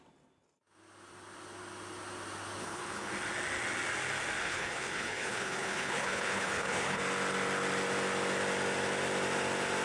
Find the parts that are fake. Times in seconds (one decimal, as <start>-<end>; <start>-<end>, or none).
2.6-3.1; 4.4-7.0